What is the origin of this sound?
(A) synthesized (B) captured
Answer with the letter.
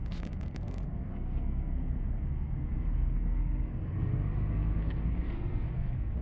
A